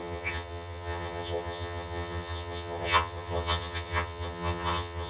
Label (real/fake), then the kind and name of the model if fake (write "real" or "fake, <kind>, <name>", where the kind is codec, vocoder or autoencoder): fake, vocoder, HiFi-GAN